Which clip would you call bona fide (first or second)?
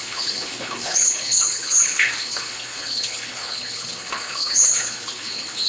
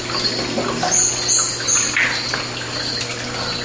second